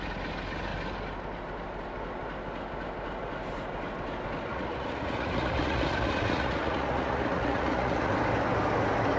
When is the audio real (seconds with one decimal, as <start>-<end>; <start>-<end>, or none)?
0.0-4.5; 8.1-9.2